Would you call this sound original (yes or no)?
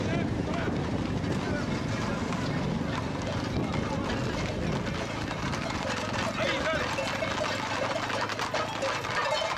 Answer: yes